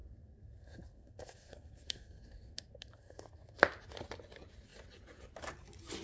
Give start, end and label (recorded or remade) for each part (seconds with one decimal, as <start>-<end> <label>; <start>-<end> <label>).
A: 0.0-3.6 remade; 3.6-6.0 recorded